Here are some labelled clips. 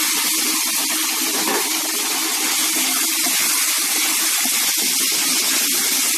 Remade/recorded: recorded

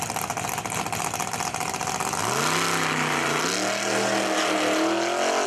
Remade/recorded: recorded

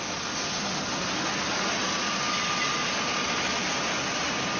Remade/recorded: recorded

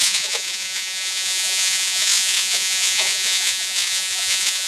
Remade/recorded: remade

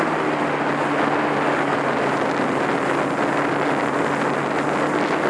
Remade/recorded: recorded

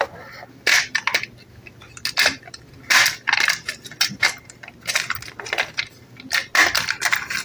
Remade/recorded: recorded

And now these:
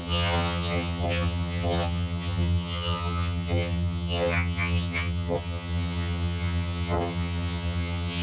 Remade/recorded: remade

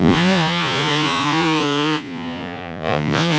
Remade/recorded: remade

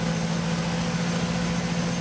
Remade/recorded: recorded